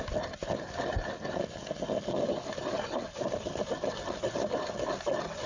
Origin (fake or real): real